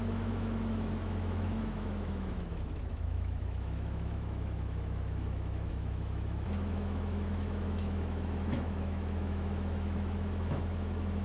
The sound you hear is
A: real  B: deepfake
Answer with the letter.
B